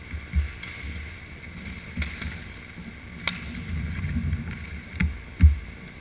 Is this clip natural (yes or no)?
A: yes